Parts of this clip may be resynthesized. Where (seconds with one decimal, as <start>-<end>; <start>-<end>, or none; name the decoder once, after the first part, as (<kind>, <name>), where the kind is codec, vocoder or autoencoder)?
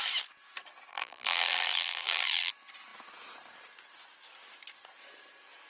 0.9-2.5 (vocoder, BigVGAN v2)